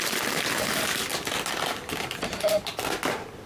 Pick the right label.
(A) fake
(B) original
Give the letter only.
B